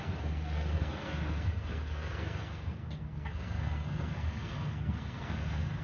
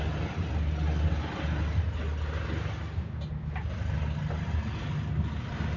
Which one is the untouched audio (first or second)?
second